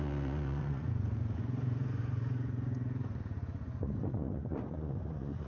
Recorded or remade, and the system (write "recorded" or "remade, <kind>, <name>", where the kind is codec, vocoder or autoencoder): remade, vocoder, Vocos